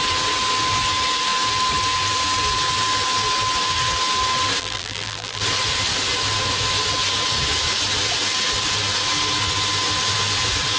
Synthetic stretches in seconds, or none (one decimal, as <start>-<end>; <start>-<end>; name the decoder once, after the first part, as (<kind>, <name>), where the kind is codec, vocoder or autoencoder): 4.6-5.4 (vocoder, BigVGAN v2)

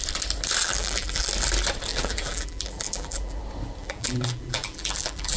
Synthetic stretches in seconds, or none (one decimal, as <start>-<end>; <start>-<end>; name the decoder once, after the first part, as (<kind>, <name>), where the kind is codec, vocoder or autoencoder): 0.6-1.3 (vocoder, BigVGAN v2); 1.9-3.4; 3.8-5.4

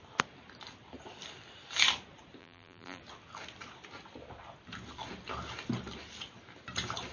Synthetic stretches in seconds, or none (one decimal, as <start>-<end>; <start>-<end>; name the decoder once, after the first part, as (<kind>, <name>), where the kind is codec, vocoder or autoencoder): 2.4-3.0 (vocoder, BigVGAN v2)

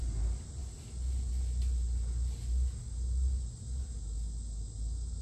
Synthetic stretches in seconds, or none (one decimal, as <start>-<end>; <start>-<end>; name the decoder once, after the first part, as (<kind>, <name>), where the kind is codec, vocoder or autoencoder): none

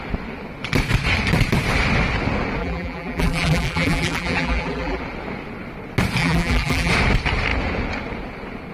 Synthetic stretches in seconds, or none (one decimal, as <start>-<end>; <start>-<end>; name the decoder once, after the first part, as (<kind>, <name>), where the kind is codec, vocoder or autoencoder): 2.6-5.0 (vocoder, BigVGAN v2); 6.2-6.9

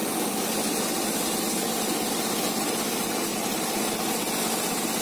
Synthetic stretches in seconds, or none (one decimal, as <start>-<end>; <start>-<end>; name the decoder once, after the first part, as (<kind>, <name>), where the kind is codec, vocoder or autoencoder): none

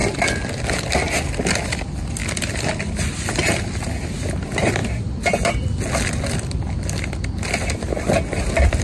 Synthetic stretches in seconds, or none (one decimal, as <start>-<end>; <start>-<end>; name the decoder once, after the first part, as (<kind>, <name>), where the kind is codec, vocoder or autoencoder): none